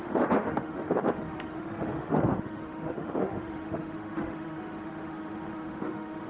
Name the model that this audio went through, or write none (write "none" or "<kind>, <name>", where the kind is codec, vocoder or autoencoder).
autoencoder, DAC-VAE